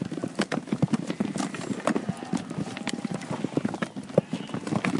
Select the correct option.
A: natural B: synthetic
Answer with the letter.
A